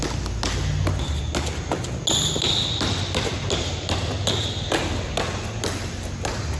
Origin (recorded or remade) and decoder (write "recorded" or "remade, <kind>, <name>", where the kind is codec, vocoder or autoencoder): recorded